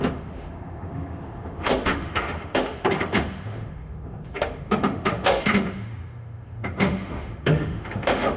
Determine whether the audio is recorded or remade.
remade